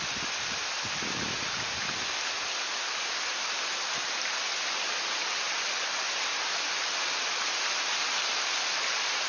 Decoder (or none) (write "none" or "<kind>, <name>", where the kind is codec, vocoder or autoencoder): none